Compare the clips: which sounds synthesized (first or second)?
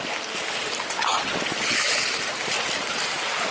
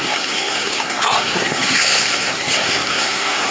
second